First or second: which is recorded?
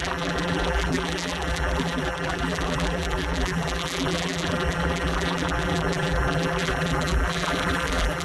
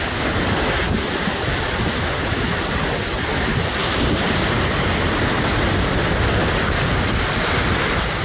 second